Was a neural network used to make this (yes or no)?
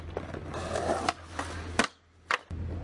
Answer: no